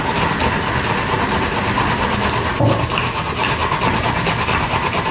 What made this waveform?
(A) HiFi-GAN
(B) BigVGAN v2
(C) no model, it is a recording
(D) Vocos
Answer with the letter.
C